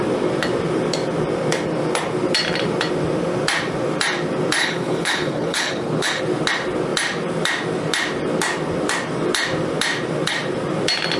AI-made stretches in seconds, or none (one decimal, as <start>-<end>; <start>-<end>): 4.6-6.2

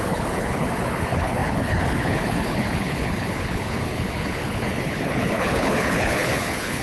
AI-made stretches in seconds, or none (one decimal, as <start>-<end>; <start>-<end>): 0.0-6.8

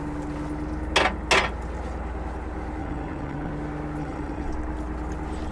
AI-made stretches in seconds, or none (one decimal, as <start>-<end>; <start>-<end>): 2.8-3.5; 4.0-4.5

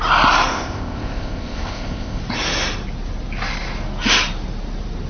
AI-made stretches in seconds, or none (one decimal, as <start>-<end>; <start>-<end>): 0.5-2.2

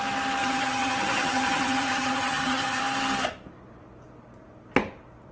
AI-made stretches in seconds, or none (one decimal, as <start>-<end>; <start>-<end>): 0.4-2.8